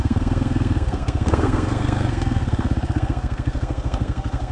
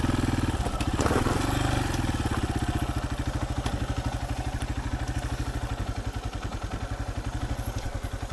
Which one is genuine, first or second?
second